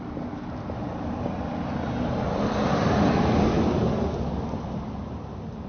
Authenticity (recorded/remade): recorded